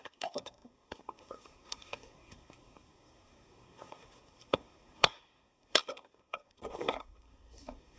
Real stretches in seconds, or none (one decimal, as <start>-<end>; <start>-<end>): none